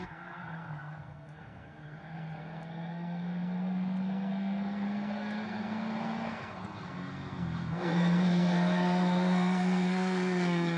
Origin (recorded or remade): remade